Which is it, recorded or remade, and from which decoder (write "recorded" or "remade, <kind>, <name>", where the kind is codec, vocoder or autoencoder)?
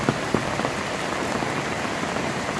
recorded